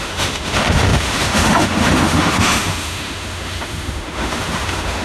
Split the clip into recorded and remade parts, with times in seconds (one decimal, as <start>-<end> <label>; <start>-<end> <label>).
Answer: 0.0-5.0 remade